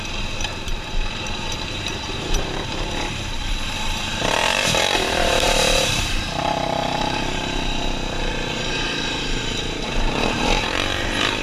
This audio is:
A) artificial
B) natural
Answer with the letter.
A